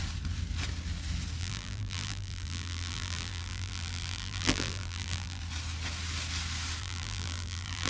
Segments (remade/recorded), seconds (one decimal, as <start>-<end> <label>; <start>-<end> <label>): 0.0-1.4 recorded; 1.4-5.4 remade; 5.4-6.8 recorded; 6.8-7.9 remade